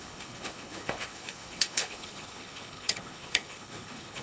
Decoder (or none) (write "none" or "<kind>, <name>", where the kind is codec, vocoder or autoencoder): codec, HILCodec